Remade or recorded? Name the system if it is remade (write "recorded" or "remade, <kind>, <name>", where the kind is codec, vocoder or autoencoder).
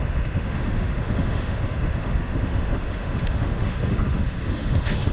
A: remade, autoencoder, DAC-VAE